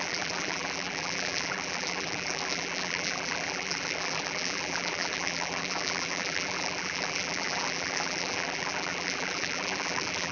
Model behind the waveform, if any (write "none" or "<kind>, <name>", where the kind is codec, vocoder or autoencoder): vocoder, BigVGAN v2